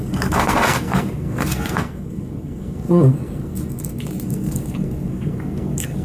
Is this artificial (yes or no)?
yes